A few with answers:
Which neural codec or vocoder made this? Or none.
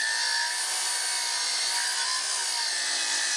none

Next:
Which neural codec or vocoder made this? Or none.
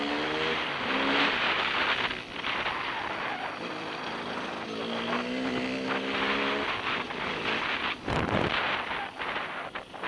none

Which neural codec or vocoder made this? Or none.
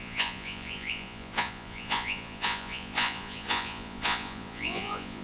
vocoder, Vocos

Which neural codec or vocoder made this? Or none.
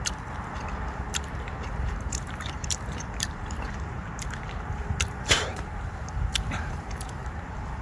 vocoder, BigVGAN v2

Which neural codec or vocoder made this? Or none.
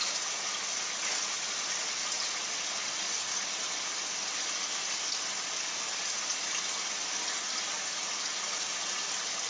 none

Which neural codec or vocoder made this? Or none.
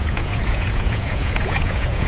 vocoder, Vocos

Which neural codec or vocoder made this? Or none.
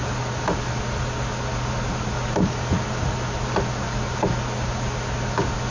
none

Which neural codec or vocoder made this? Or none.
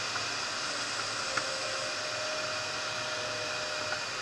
none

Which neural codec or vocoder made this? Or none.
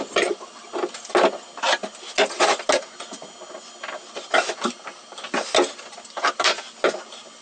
none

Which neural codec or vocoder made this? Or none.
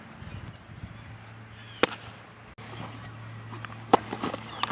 none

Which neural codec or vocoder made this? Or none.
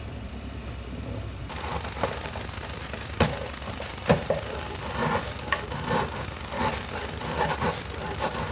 vocoder, BigVGAN v2